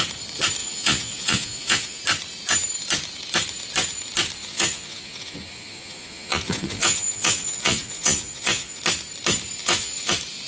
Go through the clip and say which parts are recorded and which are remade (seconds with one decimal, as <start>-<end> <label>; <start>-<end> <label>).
0.0-0.6 recorded; 0.6-2.0 remade; 2.0-4.4 recorded; 4.4-8.8 remade; 8.8-9.6 recorded; 9.6-10.1 remade; 10.1-10.5 recorded

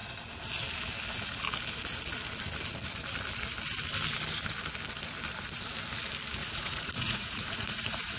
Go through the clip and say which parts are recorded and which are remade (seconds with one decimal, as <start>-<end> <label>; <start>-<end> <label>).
0.0-6.4 recorded; 6.4-8.2 remade